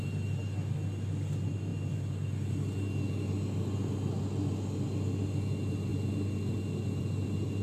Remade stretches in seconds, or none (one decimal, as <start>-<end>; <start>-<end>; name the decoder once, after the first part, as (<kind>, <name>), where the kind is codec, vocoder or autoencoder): none